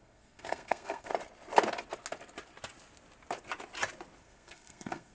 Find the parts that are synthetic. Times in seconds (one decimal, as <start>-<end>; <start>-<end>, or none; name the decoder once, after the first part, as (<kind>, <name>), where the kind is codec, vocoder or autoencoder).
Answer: 0.0-1.1 (codec, SNAC); 4.2-5.1